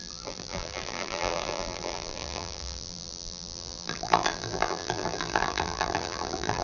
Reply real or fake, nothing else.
fake